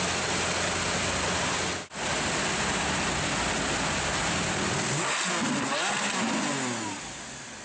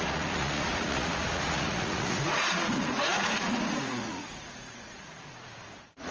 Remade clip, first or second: second